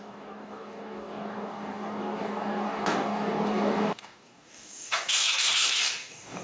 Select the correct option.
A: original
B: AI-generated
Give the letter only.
B